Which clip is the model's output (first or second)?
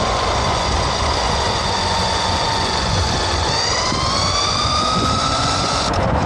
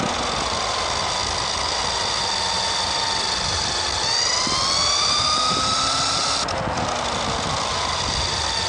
first